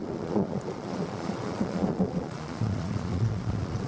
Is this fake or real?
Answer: fake